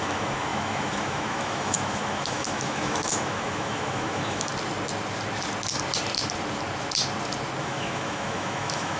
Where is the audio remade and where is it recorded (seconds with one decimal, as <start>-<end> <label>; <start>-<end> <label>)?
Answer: 0.0-4.5 remade; 4.5-7.6 recorded; 7.6-9.0 remade